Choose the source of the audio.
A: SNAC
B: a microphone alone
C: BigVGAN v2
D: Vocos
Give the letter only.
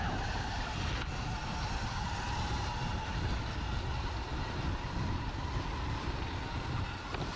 B